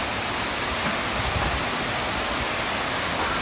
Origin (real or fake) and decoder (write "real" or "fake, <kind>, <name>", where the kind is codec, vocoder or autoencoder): real